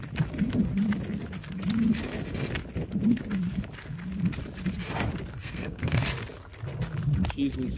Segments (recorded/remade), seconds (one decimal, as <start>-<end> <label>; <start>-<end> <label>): 0.0-5.4 recorded; 5.4-6.0 remade; 6.0-7.8 recorded